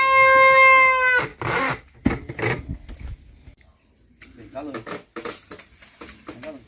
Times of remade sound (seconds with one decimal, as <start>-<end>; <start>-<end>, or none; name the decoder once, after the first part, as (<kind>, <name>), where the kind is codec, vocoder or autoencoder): none